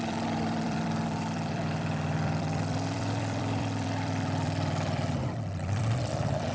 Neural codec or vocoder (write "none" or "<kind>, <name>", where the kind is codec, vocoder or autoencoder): vocoder, BigVGAN v2